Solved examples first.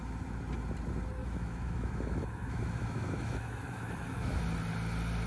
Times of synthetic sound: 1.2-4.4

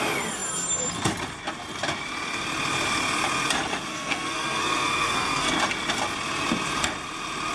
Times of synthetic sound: 3.9-5.5

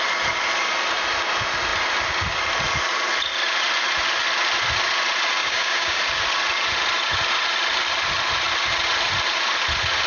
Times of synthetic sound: 5.4-6.0

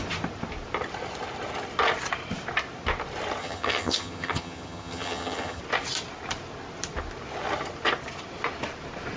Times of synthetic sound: 3.4-5.6